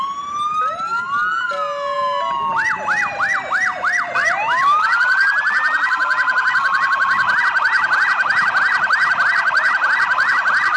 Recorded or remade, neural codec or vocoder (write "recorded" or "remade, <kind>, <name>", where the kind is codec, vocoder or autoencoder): recorded